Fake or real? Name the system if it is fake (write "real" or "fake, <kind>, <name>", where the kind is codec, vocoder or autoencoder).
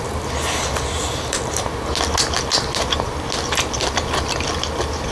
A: real